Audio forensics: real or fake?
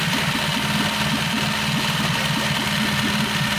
real